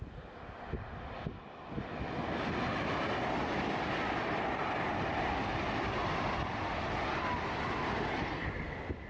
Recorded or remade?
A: recorded